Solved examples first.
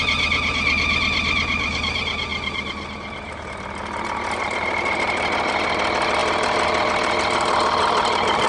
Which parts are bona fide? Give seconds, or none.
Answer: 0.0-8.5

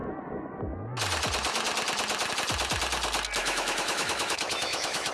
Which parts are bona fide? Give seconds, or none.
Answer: 0.0-3.4

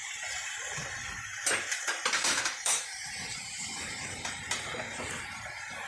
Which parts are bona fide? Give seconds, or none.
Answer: none

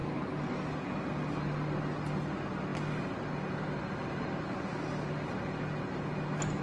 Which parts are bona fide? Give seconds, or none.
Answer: 0.0-6.6

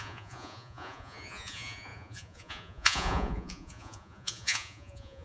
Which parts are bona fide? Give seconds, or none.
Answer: none

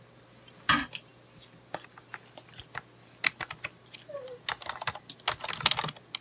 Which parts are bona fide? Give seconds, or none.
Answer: 0.0-6.2

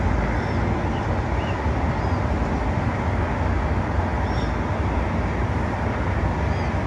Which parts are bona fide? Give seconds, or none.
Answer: 0.0-6.9